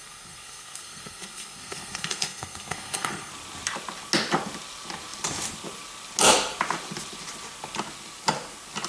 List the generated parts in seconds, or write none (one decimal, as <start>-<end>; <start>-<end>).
0.0-3.3